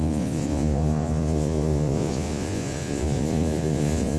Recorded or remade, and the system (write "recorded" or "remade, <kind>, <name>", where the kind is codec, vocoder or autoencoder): remade, vocoder, Vocos